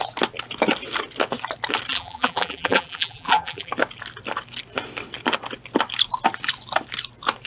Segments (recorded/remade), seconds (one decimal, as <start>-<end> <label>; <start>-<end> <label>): 0.0-1.9 recorded; 1.9-3.7 remade; 3.7-7.5 recorded